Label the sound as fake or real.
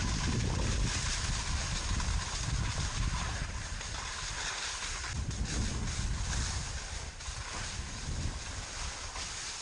real